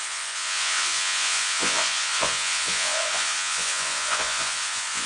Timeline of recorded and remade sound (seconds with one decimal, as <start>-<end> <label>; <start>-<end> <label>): 0.0-5.1 remade